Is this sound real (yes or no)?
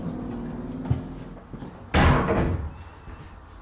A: yes